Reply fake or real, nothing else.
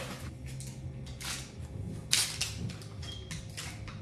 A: real